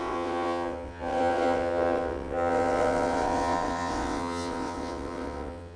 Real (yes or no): no